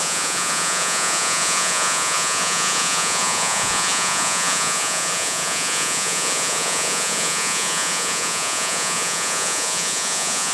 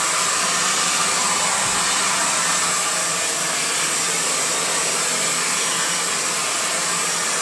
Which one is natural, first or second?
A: second